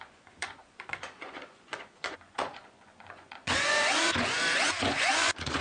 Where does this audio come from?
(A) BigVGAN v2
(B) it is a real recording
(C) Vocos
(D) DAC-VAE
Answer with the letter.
C